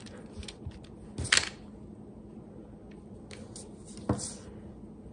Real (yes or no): yes